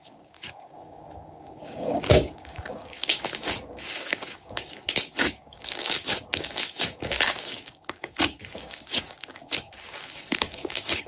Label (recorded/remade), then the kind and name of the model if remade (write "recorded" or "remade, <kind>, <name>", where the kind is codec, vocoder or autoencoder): remade, codec, DAC